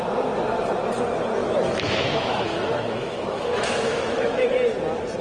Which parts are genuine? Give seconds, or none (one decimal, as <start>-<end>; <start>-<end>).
0.0-1.4; 4.5-5.2